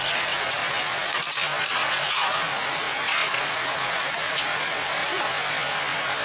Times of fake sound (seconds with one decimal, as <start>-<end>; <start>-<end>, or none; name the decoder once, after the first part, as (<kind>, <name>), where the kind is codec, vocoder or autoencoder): 0.0-1.2 (vocoder, Vocos); 1.7-5.3